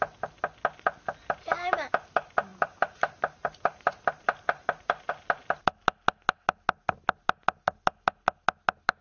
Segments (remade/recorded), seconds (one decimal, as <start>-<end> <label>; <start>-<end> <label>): 0.0-2.5 recorded; 2.5-5.1 remade; 5.1-9.0 recorded